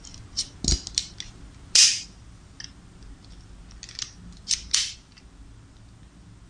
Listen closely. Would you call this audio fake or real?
real